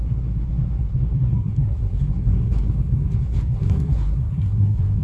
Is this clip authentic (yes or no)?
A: no